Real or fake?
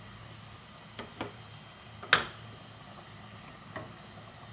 real